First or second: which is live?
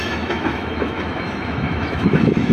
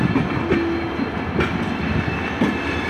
second